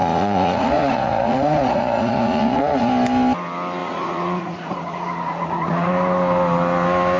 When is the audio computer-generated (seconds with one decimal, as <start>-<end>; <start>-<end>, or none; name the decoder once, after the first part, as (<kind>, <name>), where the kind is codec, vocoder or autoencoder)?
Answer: 0.0-2.9 (vocoder, Vocos); 3.8-5.9